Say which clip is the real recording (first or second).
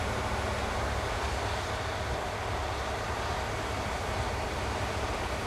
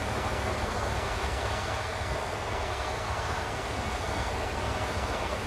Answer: first